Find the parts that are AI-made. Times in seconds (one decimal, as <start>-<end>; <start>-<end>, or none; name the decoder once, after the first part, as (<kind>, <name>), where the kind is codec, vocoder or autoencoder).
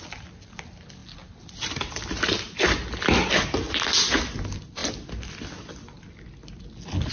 none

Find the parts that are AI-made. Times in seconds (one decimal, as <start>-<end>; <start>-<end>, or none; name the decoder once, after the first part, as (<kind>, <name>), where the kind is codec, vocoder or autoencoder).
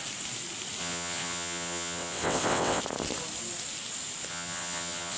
0.8-2.8 (vocoder, WaveNeXt); 4.3-5.2